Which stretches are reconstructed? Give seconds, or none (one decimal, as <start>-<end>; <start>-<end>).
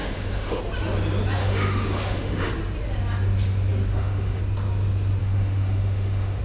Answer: 0.0-0.6; 1.4-2.5; 3.9-4.4; 5.2-6.4